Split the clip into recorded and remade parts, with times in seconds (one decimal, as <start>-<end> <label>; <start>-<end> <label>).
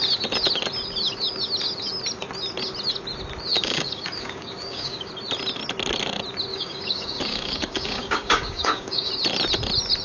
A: 0.0-3.5 recorded; 3.5-5.1 remade; 5.1-6.5 recorded; 6.5-9.1 remade; 9.1-10.0 recorded